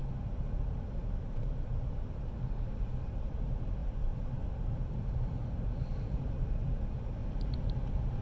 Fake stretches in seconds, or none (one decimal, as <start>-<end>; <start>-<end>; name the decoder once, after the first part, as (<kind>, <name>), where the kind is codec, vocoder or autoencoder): 0.0-5.4 (vocoder, BigVGAN v2); 5.9-7.2